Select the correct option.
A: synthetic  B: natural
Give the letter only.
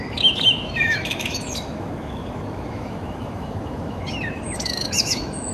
A